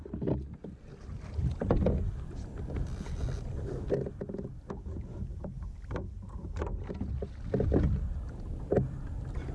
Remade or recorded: recorded